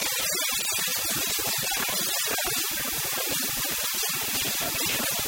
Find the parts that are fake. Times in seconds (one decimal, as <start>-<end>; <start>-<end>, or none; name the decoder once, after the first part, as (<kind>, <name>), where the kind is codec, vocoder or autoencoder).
0.0-5.3 (vocoder, BigVGAN v2)